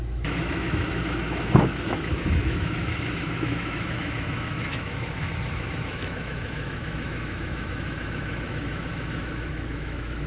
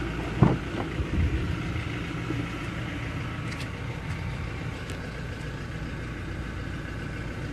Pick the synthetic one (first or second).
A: first